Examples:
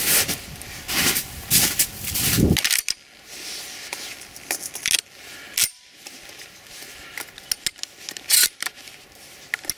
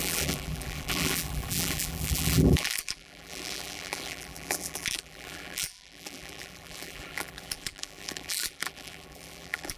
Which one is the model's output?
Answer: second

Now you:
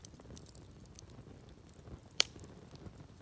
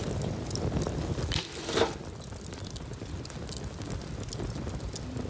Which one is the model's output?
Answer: first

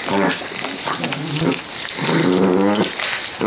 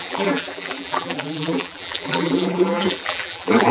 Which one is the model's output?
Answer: second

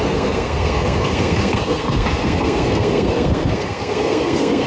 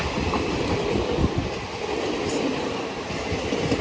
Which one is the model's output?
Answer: first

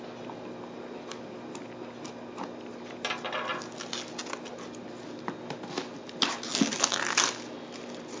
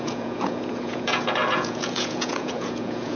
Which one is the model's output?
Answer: second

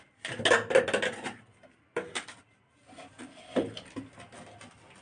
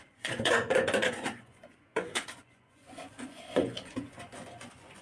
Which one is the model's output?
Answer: second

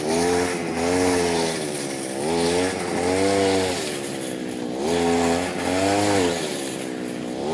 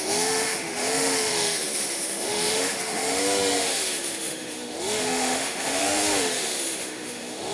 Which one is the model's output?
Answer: second